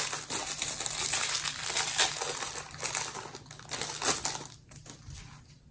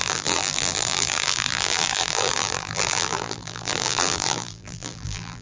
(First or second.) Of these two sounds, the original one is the first